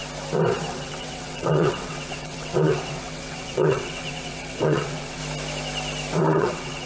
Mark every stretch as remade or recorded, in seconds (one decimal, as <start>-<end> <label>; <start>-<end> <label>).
0.0-0.7 recorded; 0.7-5.2 remade; 5.2-6.2 recorded; 6.2-6.9 remade